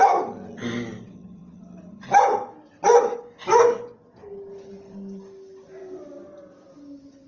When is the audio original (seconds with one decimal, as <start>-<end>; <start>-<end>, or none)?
0.0-7.3